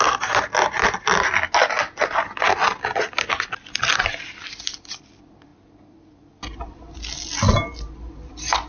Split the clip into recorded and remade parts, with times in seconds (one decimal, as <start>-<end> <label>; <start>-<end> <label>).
0.0-8.7 recorded